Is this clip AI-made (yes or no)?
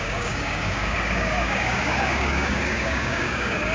yes